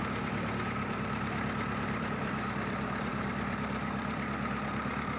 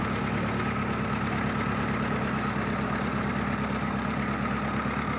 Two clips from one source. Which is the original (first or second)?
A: second